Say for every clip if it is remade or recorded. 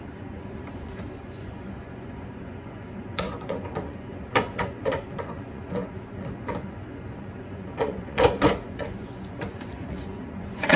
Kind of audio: remade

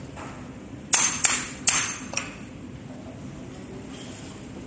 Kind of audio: recorded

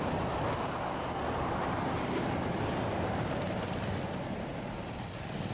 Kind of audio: recorded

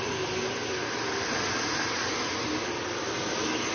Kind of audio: recorded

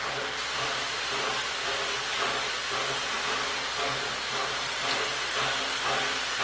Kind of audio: recorded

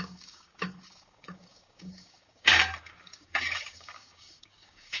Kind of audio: remade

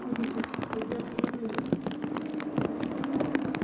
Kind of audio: recorded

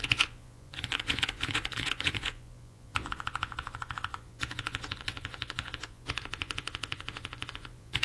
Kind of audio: remade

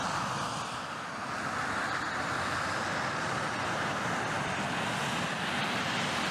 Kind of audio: recorded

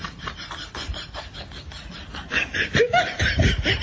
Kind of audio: recorded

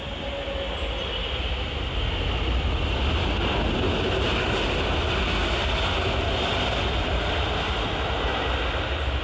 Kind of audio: recorded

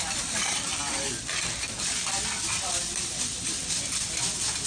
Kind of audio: recorded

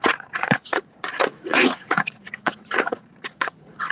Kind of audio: remade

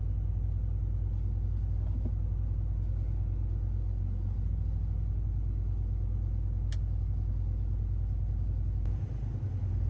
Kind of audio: recorded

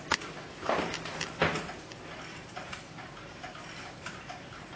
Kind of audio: recorded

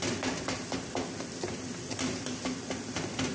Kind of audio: recorded